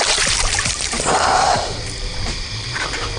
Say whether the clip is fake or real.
fake